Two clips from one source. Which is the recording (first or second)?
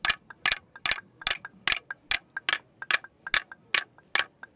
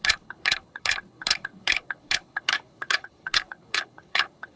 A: first